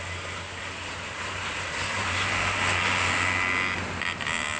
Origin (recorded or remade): recorded